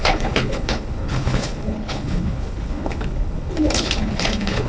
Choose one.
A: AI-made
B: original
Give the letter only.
A